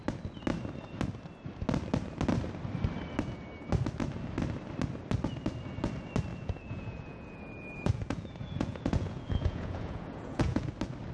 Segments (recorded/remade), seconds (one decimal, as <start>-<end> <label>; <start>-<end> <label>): 0.0-6.3 recorded; 6.3-10.7 remade; 10.7-11.1 recorded